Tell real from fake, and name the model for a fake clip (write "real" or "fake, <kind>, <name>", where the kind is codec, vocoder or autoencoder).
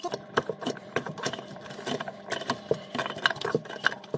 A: fake, vocoder, BigVGAN v2